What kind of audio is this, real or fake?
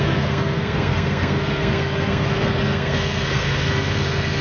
fake